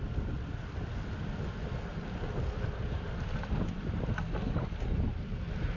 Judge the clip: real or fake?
real